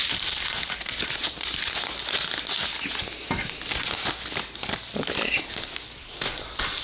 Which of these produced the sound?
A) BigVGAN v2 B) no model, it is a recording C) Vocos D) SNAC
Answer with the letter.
B